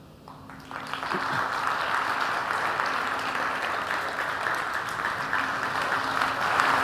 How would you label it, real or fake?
real